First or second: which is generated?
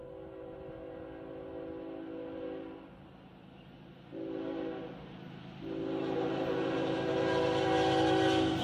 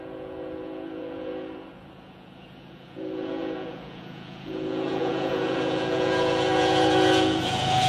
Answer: second